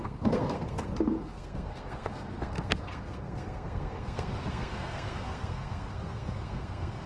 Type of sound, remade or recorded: remade